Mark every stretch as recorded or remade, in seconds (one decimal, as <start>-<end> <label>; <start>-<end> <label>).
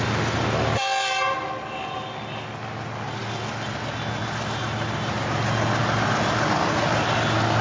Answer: 0.0-7.6 recorded